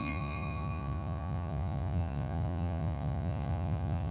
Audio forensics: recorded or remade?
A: remade